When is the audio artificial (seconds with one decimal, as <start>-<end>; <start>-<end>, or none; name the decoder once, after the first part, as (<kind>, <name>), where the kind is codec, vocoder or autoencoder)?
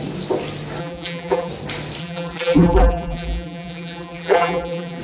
0.8-1.5 (vocoder, BigVGAN v2); 2.0-5.0